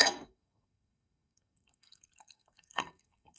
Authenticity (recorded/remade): remade